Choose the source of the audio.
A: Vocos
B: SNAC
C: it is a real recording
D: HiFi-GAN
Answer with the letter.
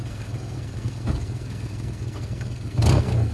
B